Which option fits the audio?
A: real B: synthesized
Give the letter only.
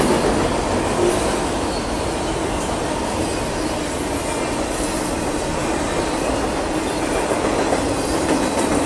A